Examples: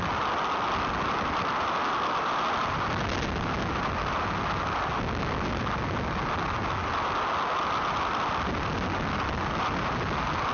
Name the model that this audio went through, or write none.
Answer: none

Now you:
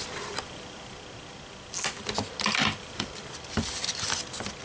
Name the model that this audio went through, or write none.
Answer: none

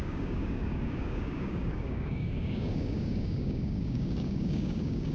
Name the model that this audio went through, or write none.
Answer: codec, DAC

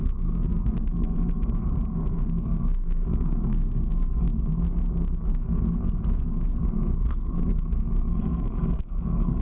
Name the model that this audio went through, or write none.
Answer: codec, SNAC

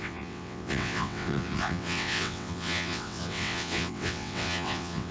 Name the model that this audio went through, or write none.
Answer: vocoder, WaveNeXt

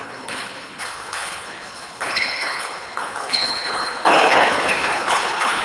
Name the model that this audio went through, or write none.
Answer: codec, HILCodec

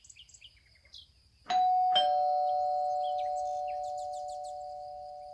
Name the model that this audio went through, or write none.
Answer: none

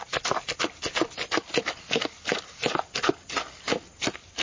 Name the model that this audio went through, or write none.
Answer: none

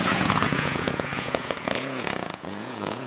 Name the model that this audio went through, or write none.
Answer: vocoder, Vocos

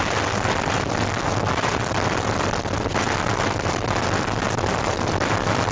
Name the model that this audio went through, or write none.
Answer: vocoder, BigVGAN v2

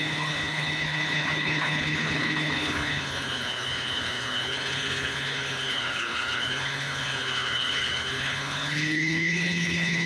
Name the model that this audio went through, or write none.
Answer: codec, HILCodec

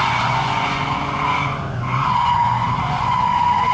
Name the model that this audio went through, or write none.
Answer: vocoder, Vocos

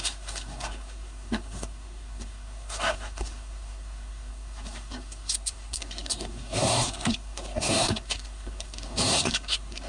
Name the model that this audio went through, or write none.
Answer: codec, SNAC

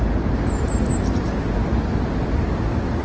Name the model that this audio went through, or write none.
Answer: none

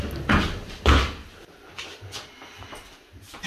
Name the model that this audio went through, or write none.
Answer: none